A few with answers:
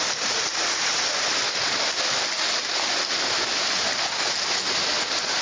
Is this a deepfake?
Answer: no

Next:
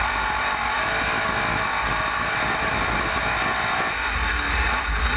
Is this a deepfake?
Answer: no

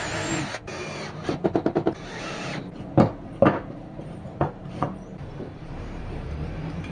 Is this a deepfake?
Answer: yes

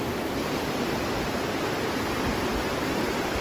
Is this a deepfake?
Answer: yes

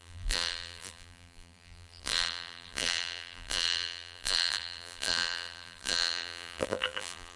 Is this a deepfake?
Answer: yes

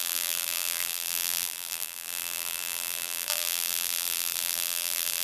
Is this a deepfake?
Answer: yes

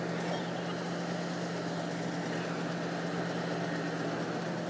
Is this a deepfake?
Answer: no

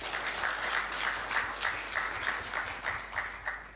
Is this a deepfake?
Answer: no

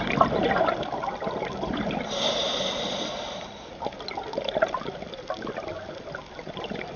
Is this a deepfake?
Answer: no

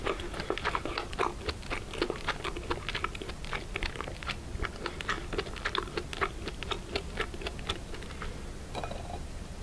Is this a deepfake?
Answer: no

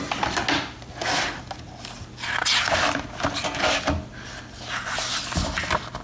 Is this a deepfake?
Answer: no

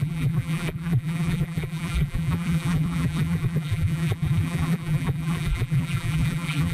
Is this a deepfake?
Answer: yes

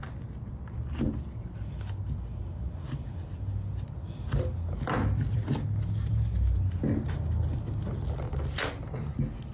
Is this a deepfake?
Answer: no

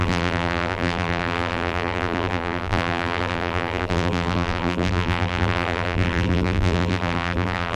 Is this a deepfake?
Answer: yes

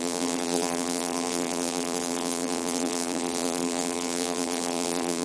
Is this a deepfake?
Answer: yes